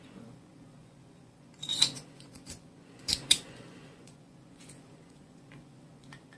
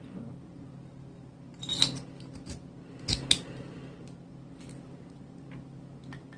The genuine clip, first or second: second